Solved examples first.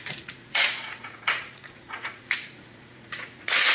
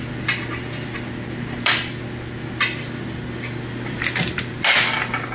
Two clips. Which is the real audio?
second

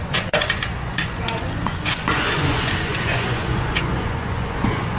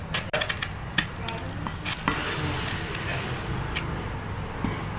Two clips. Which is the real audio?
second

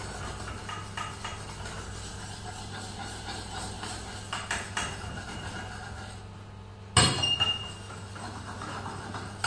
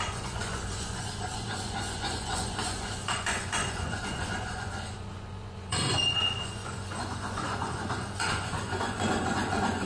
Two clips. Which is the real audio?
first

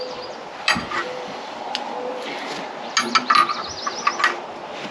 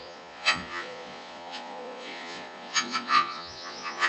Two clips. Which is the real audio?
first